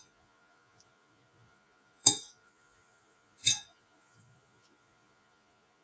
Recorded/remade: remade